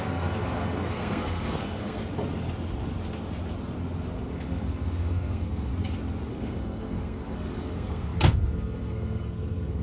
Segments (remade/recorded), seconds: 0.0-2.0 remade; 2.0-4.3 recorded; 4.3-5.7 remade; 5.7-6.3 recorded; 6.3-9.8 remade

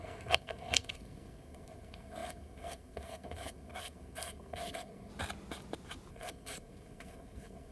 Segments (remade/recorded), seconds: 0.0-5.1 remade; 5.1-6.1 recorded; 6.1-7.7 remade

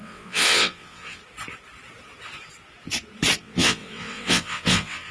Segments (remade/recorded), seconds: 0.0-1.2 remade; 1.2-3.4 recorded; 3.4-5.1 remade

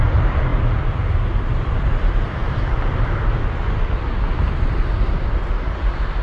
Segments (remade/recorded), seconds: 0.0-0.5 remade; 0.5-1.5 recorded; 1.5-6.2 remade